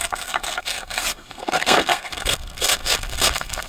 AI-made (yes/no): yes